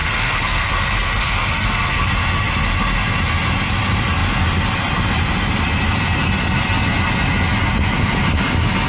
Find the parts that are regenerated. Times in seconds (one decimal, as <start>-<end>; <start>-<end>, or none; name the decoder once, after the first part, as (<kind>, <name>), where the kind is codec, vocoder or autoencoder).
0.0-0.7 (codec, SNAC); 1.2-2.0